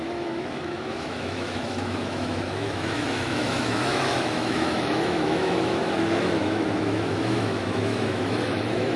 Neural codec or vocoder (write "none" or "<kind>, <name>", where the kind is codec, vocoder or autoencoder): autoencoder, DAC-VAE